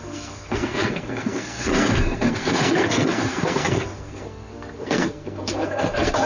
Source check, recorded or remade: remade